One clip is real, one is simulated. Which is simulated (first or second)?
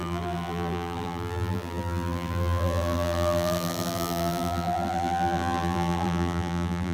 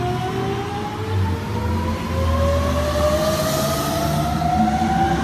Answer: first